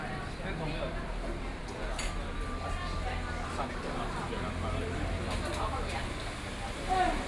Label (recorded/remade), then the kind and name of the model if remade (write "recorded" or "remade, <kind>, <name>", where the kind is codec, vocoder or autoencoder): recorded